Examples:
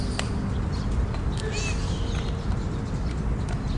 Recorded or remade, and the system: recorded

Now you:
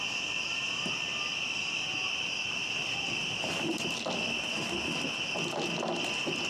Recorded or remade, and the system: recorded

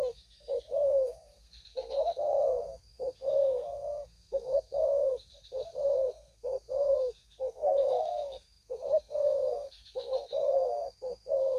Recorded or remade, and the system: remade, codec, SNAC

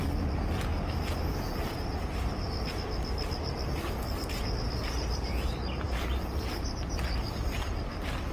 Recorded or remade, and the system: recorded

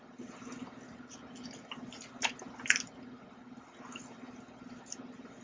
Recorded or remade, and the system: recorded